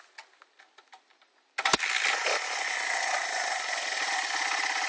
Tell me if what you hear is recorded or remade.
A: recorded